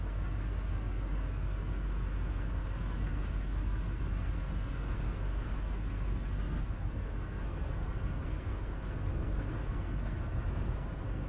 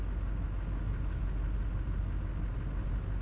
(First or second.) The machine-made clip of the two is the first